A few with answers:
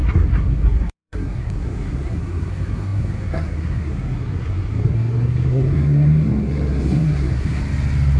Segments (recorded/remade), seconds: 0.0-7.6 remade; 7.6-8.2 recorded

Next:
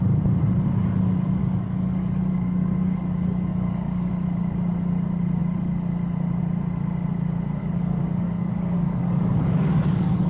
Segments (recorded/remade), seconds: 0.0-1.4 recorded; 1.4-4.1 remade; 4.1-7.6 recorded; 7.6-10.3 remade

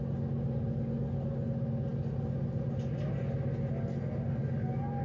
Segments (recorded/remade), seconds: 0.0-5.0 recorded

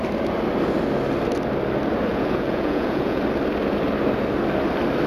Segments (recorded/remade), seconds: 0.0-2.1 recorded; 2.1-3.2 remade; 3.2-5.1 recorded

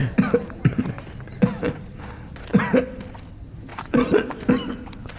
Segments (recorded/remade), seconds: 0.0-3.7 recorded; 3.7-4.5 remade; 4.5-5.2 recorded

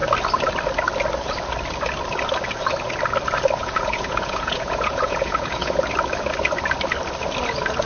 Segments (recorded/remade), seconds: 0.0-3.6 recorded; 3.6-5.8 remade; 5.8-7.9 recorded